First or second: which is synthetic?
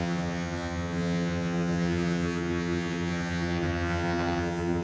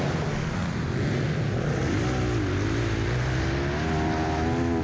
first